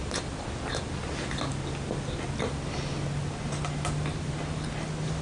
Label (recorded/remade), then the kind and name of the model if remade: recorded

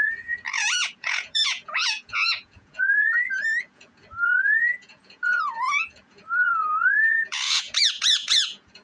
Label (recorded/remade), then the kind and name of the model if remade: remade, vocoder, Vocos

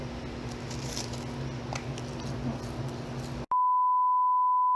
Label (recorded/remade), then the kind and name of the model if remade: recorded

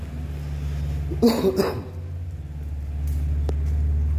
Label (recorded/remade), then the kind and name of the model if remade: recorded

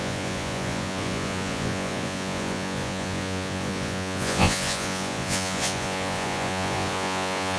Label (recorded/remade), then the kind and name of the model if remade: remade, vocoder, Vocos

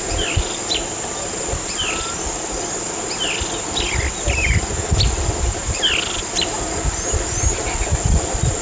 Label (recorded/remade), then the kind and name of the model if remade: recorded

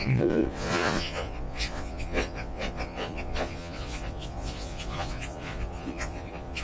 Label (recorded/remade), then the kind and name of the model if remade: remade, vocoder, Vocos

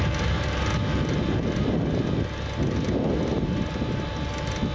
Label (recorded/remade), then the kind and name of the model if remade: recorded